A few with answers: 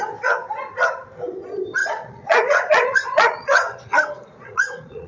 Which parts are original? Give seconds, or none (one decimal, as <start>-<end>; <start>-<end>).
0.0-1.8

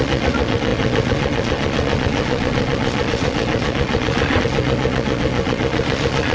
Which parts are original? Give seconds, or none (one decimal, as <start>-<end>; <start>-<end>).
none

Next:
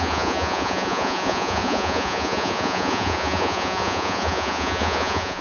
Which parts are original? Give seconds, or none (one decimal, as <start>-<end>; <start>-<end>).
none